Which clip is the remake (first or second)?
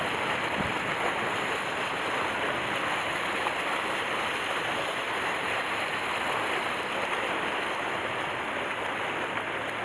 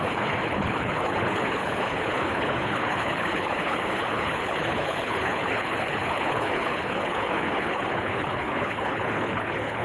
second